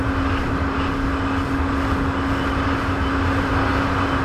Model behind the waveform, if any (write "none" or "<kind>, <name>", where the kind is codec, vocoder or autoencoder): none